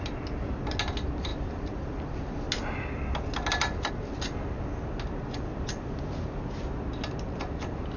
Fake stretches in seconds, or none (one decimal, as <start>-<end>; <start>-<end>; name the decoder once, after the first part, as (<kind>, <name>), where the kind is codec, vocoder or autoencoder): none